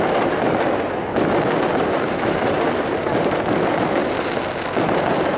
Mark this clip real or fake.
real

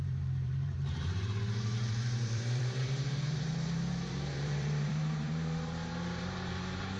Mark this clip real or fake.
fake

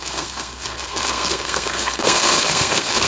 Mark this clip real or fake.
fake